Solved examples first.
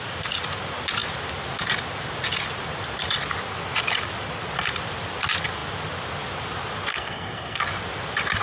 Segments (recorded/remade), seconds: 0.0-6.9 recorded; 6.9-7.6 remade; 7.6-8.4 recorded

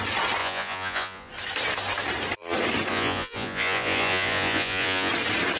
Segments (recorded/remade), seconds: 0.0-0.4 recorded; 0.4-1.3 remade; 1.3-2.9 recorded; 2.9-5.1 remade; 5.1-5.6 recorded

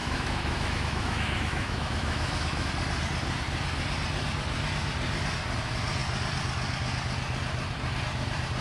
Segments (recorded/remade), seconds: 0.0-2.7 remade; 2.7-8.6 recorded

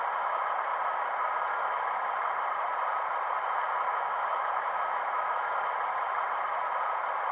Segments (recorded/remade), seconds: 0.0-3.9 recorded; 3.9-5.5 remade; 5.5-7.3 recorded

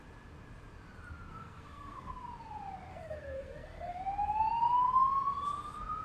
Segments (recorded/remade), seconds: 0.0-1.3 recorded; 1.3-2.1 remade; 2.1-2.9 recorded; 2.9-4.0 remade; 4.0-6.0 recorded